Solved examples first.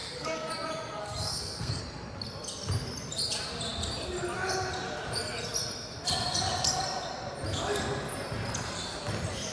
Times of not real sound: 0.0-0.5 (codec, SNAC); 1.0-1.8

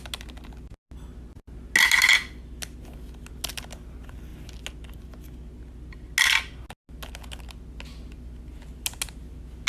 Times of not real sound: none

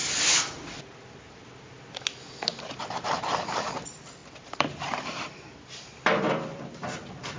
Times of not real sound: 3.2-7.4 (vocoder, BigVGAN v2)

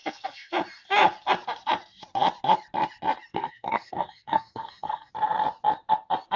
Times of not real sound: 0.0-0.5 (codec, SNAC); 3.3-5.1